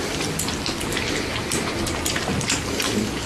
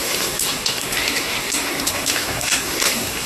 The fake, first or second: second